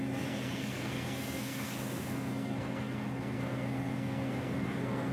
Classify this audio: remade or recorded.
remade